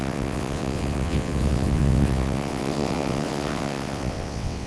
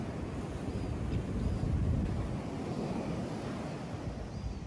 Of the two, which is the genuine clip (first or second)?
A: second